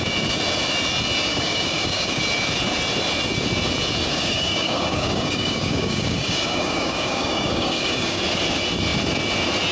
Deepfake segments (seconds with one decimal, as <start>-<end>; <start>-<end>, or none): 1.3-2.2; 4.1-8.2